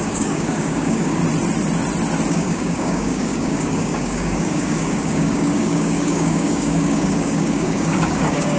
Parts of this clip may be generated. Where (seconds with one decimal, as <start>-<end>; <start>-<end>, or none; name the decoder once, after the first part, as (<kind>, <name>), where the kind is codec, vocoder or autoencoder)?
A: 0.0-1.2 (codec, DAC); 2.3-8.6